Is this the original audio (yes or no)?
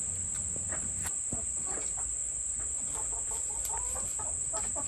yes